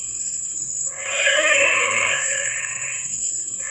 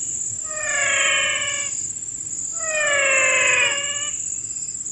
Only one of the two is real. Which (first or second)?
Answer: second